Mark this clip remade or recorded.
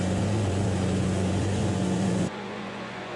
remade